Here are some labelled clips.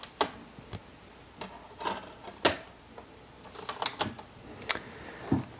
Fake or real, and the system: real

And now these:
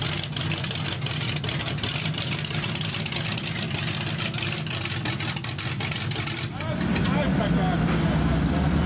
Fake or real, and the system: real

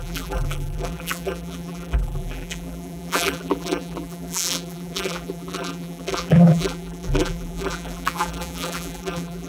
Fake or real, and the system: fake, vocoder, BigVGAN v2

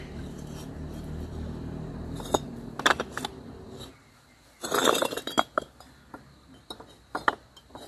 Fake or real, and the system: real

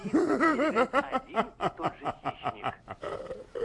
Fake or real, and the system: fake, vocoder, BigVGAN v2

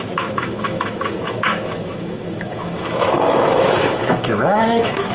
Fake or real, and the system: fake, autoencoder, DAC-VAE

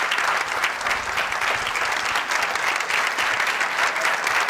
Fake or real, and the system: real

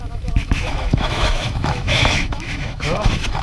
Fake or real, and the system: fake, autoencoder, DAC-VAE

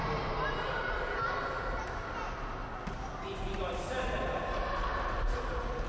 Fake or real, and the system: real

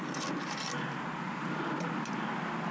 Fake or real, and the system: real